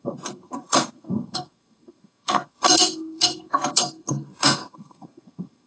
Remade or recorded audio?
remade